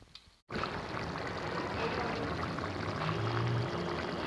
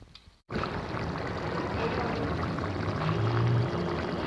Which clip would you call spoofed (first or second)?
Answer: second